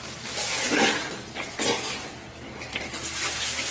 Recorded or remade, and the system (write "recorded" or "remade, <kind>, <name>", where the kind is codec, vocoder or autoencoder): recorded